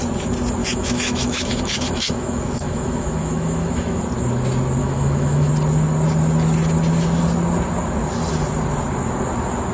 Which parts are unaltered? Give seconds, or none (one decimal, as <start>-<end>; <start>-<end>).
0.0-0.6; 4.0-4.8; 5.5-9.7